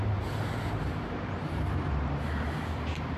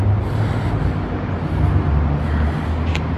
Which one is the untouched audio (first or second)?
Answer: second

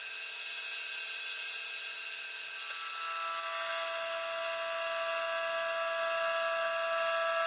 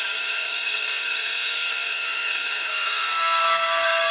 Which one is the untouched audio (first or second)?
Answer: first